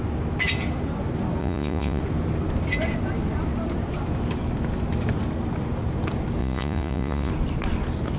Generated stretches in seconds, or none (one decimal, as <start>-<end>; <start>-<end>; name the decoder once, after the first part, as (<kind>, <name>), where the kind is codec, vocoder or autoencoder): 1.4-2.0 (vocoder, Vocos); 6.4-7.3